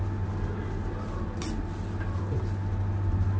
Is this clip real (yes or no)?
yes